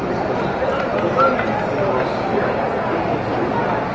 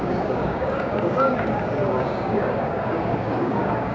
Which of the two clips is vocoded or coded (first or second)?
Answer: second